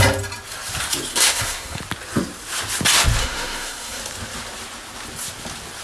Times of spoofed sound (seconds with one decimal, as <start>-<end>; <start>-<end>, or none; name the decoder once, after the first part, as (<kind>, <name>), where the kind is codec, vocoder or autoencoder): 1.1-1.8 (codec, SNAC); 3.2-4.0